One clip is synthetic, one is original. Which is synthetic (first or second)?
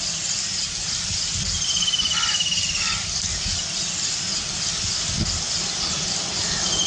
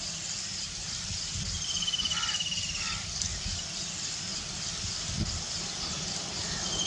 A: second